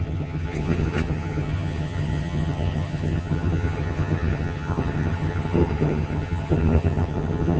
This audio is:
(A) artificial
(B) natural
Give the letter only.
A